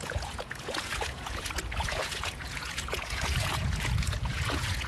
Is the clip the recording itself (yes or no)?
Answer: no